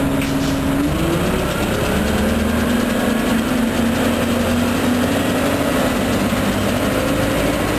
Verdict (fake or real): real